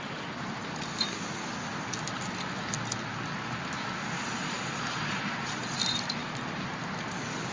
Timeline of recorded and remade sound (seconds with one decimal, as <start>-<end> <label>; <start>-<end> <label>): 0.0-4.4 recorded; 4.4-5.8 remade; 5.8-7.5 recorded